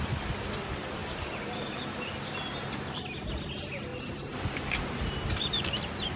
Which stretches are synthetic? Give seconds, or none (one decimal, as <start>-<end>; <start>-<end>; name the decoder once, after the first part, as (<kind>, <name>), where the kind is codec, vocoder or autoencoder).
1.0-1.6 (vocoder, BigVGAN v2); 3.9-5.1